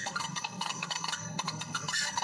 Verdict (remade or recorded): remade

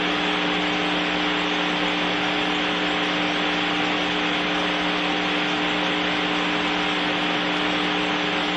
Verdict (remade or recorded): recorded